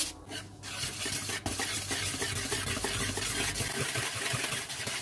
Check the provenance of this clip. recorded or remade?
recorded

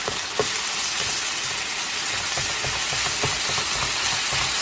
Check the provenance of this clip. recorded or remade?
recorded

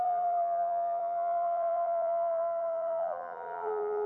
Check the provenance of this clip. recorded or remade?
remade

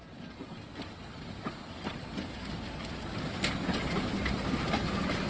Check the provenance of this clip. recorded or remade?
recorded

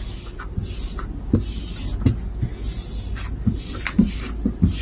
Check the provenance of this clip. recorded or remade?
recorded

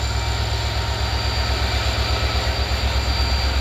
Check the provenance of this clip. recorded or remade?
recorded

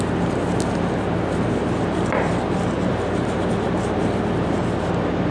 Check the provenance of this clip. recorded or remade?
remade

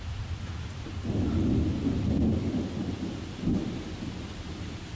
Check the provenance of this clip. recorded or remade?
recorded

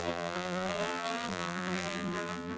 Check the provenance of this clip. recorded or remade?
remade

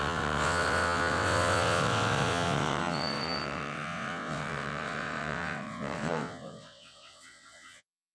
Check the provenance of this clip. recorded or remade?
remade